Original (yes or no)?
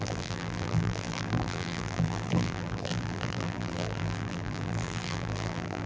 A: no